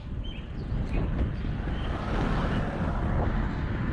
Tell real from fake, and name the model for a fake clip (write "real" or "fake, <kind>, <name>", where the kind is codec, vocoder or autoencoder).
real